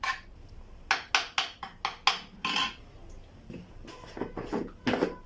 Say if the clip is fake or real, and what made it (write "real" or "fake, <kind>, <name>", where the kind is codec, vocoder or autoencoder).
real